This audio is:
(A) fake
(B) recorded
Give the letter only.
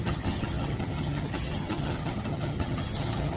A